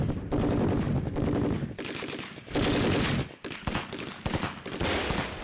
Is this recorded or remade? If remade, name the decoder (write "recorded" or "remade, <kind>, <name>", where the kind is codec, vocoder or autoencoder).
recorded